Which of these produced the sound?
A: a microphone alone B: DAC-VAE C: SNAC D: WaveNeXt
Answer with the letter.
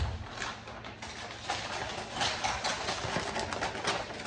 A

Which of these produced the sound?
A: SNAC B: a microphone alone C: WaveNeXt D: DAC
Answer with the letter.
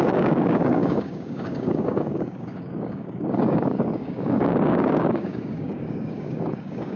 D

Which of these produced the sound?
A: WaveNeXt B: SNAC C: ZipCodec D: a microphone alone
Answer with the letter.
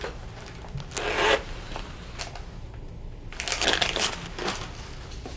D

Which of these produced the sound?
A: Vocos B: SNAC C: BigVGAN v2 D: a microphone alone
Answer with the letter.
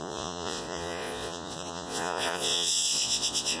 A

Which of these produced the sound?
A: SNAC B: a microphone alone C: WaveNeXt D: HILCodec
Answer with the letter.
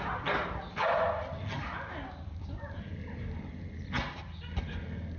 B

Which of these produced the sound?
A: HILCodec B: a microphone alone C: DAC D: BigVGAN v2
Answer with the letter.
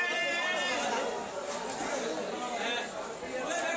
B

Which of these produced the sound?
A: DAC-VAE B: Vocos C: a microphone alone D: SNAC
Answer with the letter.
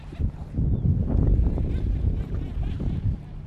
C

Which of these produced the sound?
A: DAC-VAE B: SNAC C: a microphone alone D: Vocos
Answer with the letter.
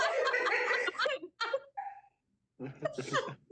C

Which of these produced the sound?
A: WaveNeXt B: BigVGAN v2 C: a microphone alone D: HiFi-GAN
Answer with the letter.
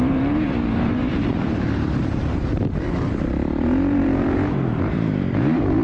B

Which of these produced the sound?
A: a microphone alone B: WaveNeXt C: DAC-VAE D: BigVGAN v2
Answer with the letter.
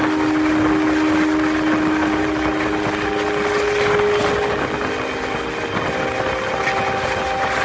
A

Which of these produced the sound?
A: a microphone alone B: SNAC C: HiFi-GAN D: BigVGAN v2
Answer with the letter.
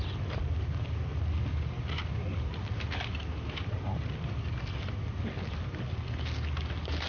A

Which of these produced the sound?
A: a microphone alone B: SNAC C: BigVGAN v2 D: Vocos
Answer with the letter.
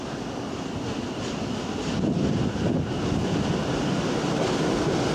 A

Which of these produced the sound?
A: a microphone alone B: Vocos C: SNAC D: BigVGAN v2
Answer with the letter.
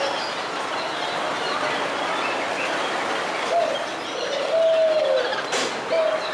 A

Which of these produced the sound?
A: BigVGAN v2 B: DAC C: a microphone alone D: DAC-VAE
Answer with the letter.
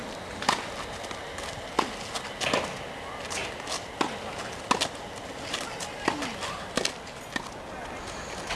C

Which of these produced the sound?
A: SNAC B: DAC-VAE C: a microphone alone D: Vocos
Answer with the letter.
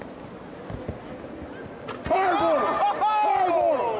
C